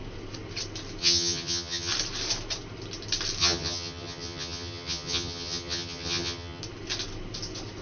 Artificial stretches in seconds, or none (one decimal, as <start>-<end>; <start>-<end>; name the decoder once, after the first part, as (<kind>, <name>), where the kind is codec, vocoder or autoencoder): 1.0-1.9 (vocoder, HiFi-GAN); 3.4-6.6